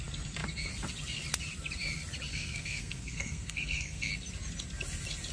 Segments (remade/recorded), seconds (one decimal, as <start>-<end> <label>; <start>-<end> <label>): 0.0-2.3 recorded; 2.3-4.1 remade; 4.1-5.3 recorded